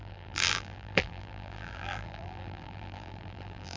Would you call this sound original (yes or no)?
no